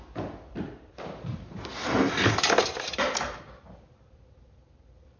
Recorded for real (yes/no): yes